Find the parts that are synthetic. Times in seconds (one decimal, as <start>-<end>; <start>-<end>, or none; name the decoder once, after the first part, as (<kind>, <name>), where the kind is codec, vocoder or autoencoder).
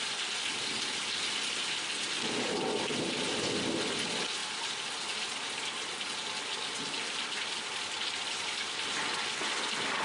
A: 4.4-6.0 (vocoder, BigVGAN v2)